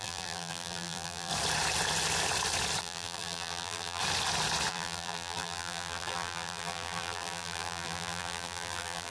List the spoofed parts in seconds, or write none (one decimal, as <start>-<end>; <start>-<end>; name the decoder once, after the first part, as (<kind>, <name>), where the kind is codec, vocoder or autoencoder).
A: 0.0-1.3 (vocoder, BigVGAN v2); 2.8-4.0; 4.7-9.1